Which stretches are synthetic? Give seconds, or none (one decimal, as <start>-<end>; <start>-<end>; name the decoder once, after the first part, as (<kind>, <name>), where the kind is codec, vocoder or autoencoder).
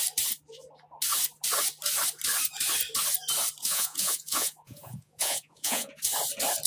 3.6-5.9 (vocoder, Vocos)